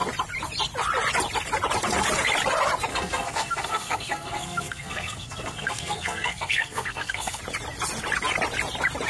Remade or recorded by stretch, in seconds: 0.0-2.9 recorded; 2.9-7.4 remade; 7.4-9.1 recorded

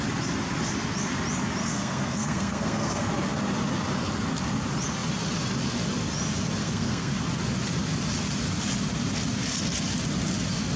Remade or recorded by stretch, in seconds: 0.0-1.6 recorded; 1.6-3.1 remade; 3.1-6.6 recorded; 6.6-7.1 remade; 7.1-10.8 recorded

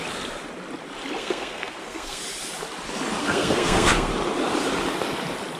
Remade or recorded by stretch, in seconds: 0.0-1.2 recorded; 1.2-2.2 remade; 2.2-3.2 recorded; 3.2-4.1 remade; 4.1-5.6 recorded